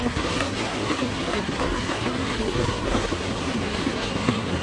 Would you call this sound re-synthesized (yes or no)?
yes